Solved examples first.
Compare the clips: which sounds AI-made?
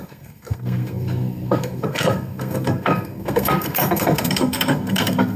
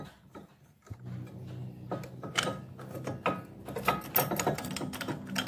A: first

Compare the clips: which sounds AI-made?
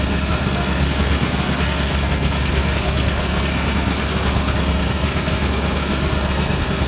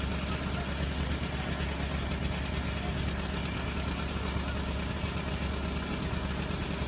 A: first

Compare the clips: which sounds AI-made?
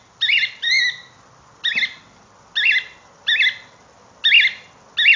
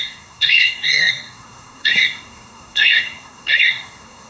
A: second